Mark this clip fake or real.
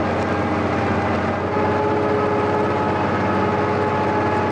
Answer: real